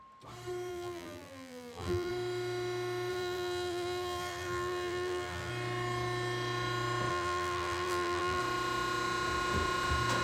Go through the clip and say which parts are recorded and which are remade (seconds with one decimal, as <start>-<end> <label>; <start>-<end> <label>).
0.0-0.7 recorded; 0.7-2.1 remade; 2.1-3.1 recorded; 3.1-5.5 remade; 5.5-7.1 recorded; 7.1-8.4 remade; 8.4-10.2 recorded